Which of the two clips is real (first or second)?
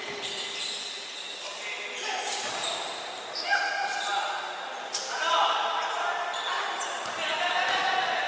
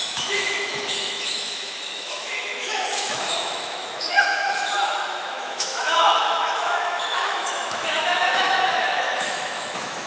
first